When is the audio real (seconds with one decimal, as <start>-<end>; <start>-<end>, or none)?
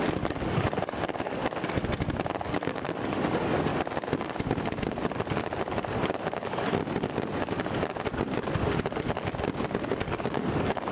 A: 1.4-2.5; 3.7-6.2; 6.8-9.9